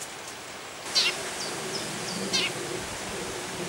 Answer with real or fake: real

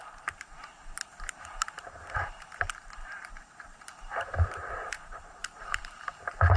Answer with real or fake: fake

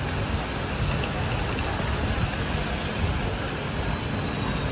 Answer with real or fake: real